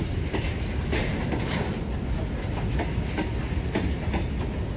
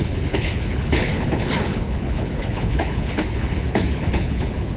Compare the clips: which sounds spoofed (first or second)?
second